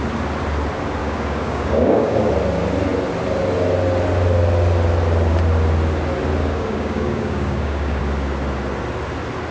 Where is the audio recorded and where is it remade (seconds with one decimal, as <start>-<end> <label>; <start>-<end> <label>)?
0.0-1.0 recorded; 1.0-2.3 remade; 2.3-6.4 recorded; 6.4-8.0 remade; 8.0-9.5 recorded